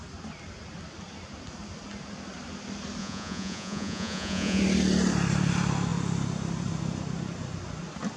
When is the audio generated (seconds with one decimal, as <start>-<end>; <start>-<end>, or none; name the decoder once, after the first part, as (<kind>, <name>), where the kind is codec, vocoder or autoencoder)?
3.0-4.6 (vocoder, Vocos)